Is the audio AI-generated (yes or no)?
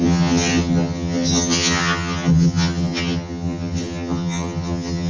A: yes